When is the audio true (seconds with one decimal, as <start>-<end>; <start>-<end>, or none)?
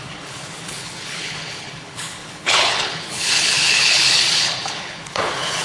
none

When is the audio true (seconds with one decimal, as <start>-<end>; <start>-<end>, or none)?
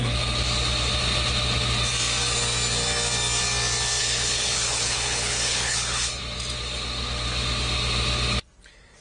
0.0-4.0; 6.2-9.0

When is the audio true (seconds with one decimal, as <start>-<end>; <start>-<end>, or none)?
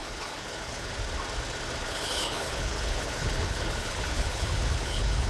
0.9-1.8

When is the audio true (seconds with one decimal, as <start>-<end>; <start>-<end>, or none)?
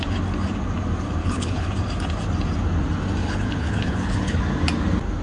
0.0-1.2; 1.7-3.2; 4.4-5.2